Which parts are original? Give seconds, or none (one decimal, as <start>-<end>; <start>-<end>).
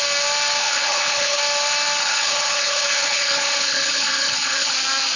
0.0-0.6; 1.4-2.0; 4.7-5.2